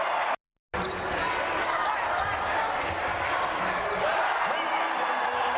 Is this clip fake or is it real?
real